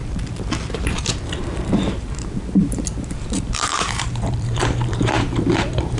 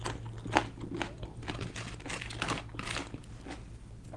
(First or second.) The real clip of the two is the second